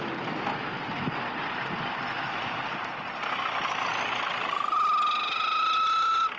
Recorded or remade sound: recorded